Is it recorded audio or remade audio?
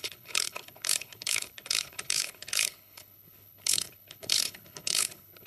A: remade